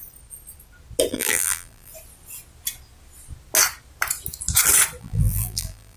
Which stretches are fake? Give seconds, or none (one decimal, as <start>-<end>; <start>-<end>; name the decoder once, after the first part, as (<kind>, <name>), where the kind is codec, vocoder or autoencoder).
1.1-1.9 (vocoder, BigVGAN v2); 5.0-6.0